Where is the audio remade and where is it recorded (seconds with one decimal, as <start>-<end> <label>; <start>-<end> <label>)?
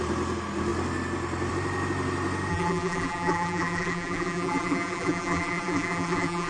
0.0-2.5 recorded; 2.5-6.5 remade